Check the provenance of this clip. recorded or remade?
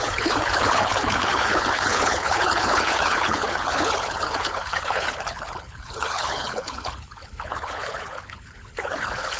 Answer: remade